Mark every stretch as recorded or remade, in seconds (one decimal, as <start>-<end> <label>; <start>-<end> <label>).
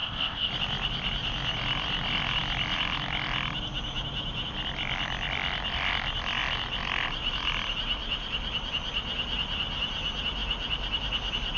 0.0-0.5 remade; 0.5-11.6 recorded